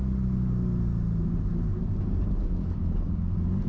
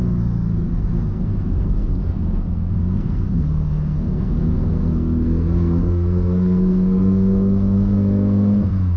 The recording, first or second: first